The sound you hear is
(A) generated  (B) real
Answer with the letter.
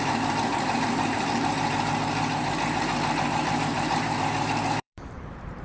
A